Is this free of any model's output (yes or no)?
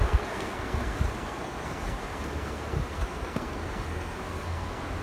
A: no